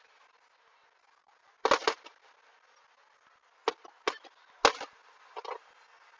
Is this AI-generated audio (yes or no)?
no